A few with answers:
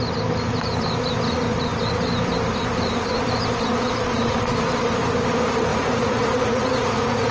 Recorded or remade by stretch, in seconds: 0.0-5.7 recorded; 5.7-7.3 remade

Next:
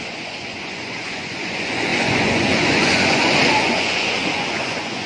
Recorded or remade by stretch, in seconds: 0.0-5.1 remade

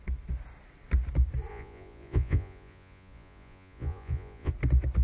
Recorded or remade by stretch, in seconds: 0.0-1.5 recorded; 1.5-4.5 remade; 4.5-5.0 recorded

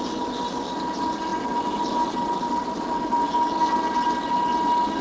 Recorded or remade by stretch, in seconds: 0.0-5.0 recorded